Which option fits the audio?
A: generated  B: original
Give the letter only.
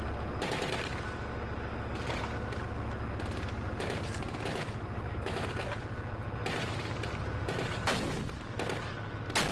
B